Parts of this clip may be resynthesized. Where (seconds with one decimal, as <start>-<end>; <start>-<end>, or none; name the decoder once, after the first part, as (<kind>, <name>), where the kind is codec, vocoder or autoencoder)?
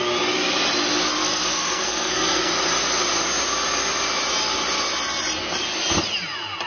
1.2-2.5 (codec, SNAC)